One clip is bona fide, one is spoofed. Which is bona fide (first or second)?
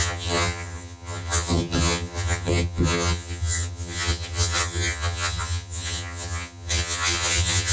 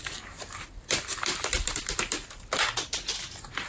second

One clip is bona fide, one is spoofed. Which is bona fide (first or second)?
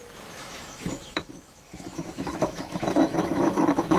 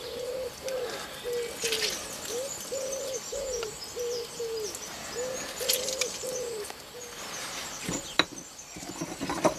second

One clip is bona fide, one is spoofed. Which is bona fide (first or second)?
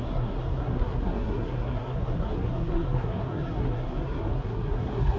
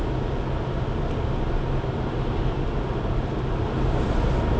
second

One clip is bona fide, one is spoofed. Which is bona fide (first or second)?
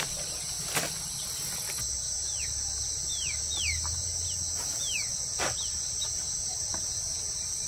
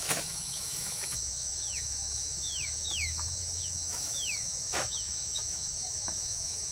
first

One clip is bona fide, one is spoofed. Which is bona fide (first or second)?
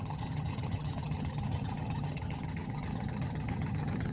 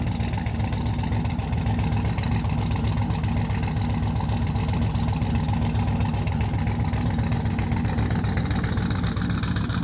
second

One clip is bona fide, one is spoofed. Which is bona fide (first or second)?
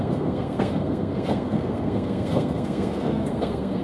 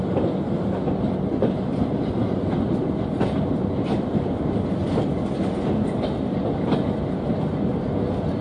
second